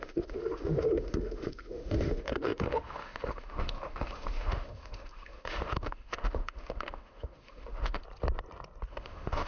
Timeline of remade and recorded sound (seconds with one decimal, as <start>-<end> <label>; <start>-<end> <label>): 0.0-8.0 remade; 8.0-8.9 recorded; 8.9-9.5 remade